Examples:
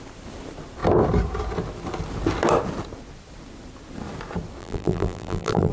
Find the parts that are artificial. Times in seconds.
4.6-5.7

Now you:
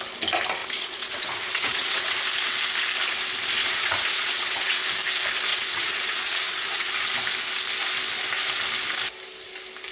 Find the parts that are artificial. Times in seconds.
0.6-2.2; 3.6-4.8; 5.5-6.9